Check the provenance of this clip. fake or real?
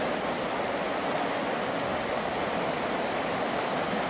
real